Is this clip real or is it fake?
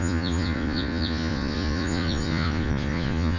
fake